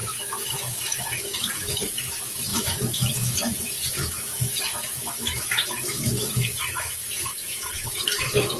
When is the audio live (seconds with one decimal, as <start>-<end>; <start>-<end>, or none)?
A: none